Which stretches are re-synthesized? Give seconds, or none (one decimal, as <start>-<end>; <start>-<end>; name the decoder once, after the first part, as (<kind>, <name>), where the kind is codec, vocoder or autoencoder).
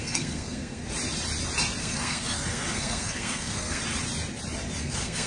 0.0-0.8 (codec, SNAC); 1.8-3.8; 4.8-5.3